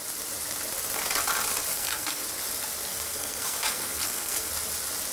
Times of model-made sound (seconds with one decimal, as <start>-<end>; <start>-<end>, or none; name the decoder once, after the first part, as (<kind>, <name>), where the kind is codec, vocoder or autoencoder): 1.7-2.2 (codec, SNAC); 2.9-4.5